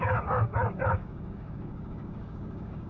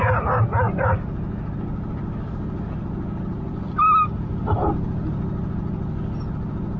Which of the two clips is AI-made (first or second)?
first